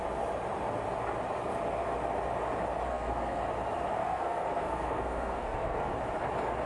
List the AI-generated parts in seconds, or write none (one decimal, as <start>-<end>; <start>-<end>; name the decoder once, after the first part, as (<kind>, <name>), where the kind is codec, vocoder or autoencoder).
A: 2.9-3.4 (codec, SNAC); 4.0-5.9